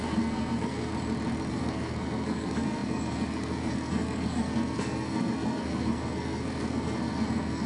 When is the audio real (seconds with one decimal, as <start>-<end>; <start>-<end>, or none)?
0.9-1.5